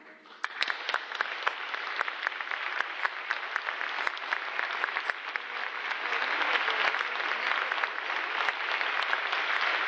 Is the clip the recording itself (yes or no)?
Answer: yes